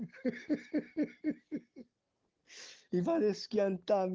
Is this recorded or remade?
recorded